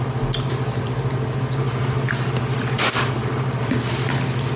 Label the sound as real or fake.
real